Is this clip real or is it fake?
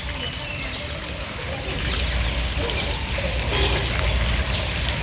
real